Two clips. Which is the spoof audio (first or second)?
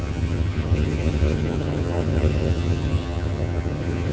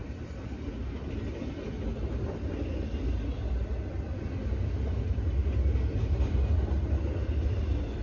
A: first